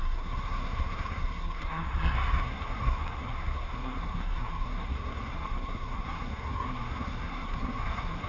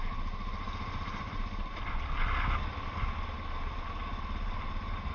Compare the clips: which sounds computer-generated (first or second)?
first